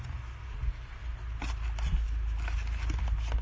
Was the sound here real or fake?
real